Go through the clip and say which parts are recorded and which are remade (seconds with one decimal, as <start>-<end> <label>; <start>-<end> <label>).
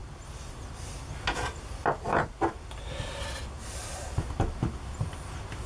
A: 0.0-5.7 recorded